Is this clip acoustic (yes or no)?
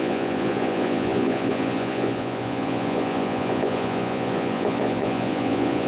no